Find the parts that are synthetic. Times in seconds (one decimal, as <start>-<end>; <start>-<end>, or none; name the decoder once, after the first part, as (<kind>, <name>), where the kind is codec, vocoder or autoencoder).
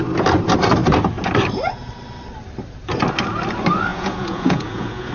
3.9-5.1 (vocoder, Vocos)